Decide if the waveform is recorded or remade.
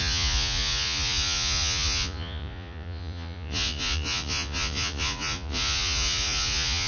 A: remade